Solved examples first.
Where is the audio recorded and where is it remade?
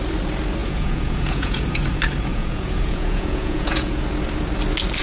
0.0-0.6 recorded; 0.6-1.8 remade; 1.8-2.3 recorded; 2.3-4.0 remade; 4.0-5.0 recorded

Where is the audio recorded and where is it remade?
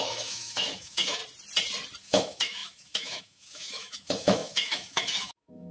0.0-1.2 remade; 1.2-2.0 recorded; 2.0-5.7 remade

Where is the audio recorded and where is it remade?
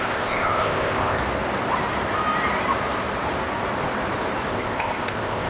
0.0-1.2 remade; 1.2-4.5 recorded; 4.5-5.5 remade